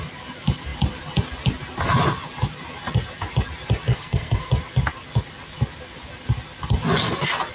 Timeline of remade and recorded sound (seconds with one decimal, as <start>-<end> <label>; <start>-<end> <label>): 0.0-3.9 recorded; 3.9-4.5 remade; 4.5-7.5 recorded